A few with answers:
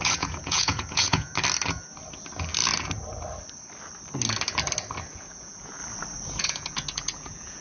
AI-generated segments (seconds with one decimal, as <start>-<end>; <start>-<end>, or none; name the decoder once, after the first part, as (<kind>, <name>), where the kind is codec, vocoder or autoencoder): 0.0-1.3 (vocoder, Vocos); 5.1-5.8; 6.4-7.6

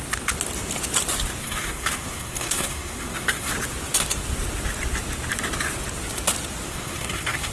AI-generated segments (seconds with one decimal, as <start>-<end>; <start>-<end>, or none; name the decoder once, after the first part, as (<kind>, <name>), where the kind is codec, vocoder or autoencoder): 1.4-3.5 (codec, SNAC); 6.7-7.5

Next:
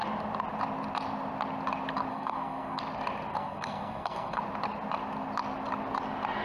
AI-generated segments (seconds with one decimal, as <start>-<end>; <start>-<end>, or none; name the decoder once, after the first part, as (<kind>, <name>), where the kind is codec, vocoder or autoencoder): 2.1-2.8 (codec, SNAC); 3.3-4.4

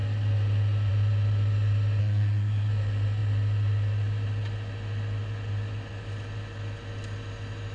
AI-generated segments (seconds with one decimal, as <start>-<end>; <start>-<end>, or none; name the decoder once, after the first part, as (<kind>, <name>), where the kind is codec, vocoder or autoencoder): 2.0-2.7 (codec, SNAC)

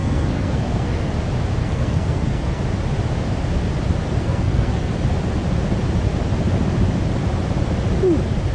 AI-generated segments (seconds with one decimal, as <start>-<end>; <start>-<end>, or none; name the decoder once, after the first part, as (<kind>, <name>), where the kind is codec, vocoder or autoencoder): 0.0-1.1 (codec, SNAC); 1.6-2.6; 4.2-4.9

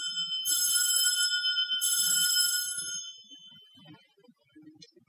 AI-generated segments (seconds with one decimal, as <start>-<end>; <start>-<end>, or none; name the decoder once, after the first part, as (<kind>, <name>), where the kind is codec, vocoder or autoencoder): 0.4-3.5 (vocoder, BigVGAN v2)